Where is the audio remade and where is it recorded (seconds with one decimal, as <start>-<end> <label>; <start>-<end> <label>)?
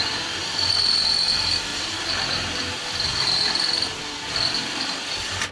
0.0-1.7 recorded; 1.7-5.0 remade; 5.0-5.5 recorded